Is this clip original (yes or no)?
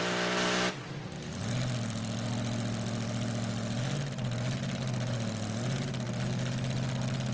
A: yes